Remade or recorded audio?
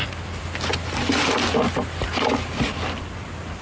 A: recorded